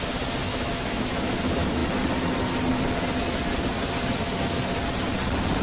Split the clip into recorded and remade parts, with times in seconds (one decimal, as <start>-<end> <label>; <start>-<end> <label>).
0.0-0.5 recorded; 0.5-1.3 remade; 1.3-5.6 recorded